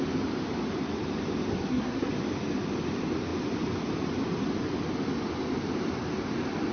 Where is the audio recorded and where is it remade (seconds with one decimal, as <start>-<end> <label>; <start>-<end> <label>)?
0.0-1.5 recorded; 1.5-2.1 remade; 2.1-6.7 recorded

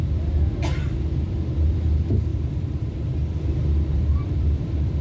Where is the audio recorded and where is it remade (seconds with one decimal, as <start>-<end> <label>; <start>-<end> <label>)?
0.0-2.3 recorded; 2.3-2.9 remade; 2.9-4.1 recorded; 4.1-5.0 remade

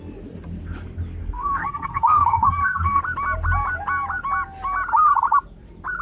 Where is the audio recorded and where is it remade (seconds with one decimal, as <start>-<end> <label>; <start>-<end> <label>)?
0.0-1.2 recorded; 1.2-3.0 remade; 3.0-6.0 recorded